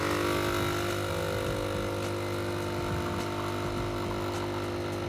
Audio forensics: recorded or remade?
recorded